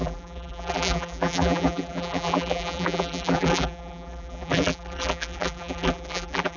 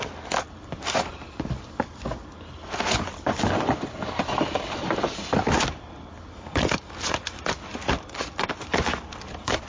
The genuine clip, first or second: second